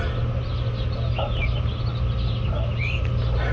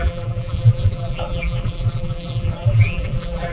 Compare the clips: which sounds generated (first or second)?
second